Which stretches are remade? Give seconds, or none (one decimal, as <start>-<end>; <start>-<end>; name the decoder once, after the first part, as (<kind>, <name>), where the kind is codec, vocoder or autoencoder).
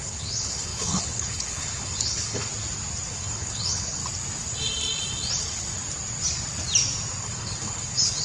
0.0-2.5 (codec, HILCodec); 3.1-4.0; 7.2-8.2